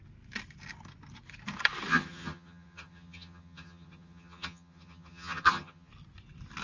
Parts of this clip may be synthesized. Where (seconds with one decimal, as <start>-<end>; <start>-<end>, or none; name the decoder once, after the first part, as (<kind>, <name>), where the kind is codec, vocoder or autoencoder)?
1.9-5.9 (vocoder, HiFi-GAN)

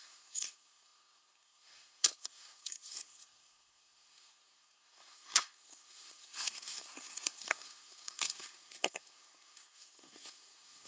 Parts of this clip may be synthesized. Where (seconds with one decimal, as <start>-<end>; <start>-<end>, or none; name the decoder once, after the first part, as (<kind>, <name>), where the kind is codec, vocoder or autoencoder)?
0.0-10.9 (codec, SNAC)

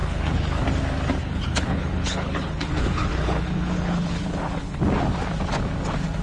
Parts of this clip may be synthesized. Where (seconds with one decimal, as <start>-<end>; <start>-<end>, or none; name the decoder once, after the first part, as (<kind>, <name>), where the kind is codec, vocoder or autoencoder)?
0.0-0.6 (codec, HILCodec); 1.2-4.8

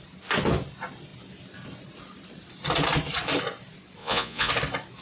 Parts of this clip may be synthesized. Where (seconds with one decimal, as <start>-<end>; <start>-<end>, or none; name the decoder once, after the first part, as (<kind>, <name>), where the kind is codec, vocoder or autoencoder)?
4.0-4.5 (vocoder, Vocos)

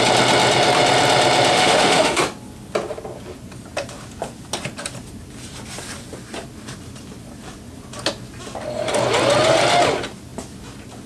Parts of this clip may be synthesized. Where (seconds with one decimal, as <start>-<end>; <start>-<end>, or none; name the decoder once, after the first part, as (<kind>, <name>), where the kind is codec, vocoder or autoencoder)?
1.5-2.2 (autoencoder, DAC-VAE)

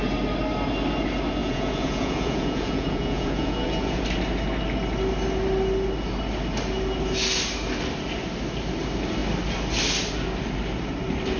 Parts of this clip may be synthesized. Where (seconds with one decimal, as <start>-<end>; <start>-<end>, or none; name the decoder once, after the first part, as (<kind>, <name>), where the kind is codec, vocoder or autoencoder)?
1.4-4.0 (vocoder, Vocos)

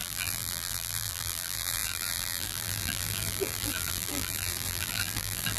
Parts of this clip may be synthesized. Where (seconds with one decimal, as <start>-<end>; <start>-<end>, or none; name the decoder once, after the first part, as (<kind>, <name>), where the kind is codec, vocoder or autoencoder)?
0.0-5.6 (vocoder, BigVGAN v2)

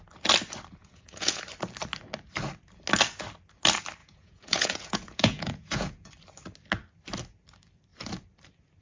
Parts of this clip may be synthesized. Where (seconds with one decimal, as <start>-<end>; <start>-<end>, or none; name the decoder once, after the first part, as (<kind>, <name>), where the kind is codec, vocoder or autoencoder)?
0.8-1.4 (vocoder, Vocos); 4.0-6.1